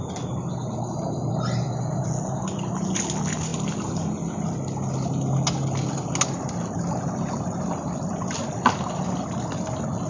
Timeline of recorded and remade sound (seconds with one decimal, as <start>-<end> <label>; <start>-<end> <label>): 0.0-10.1 recorded